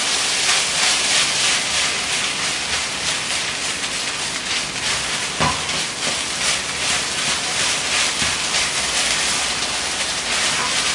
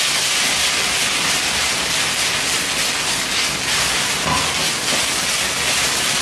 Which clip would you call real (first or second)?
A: second